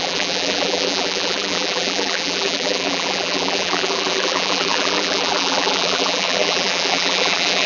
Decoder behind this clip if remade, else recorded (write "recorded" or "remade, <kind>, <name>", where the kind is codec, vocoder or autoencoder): remade, vocoder, BigVGAN v2